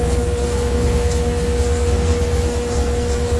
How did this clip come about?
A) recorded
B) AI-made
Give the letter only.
B